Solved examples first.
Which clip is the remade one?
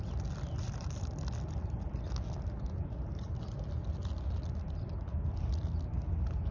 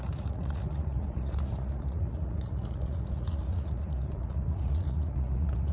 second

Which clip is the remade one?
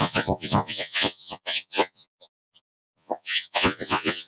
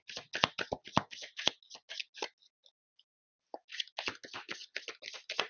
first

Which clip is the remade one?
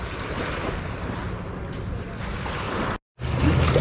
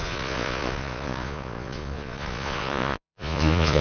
second